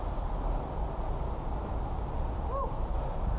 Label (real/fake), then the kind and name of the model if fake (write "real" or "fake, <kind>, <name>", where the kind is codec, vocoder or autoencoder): real